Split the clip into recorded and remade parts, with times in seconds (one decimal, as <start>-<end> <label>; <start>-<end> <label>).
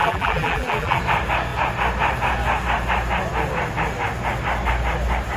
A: 0.0-1.0 remade; 1.0-5.4 recorded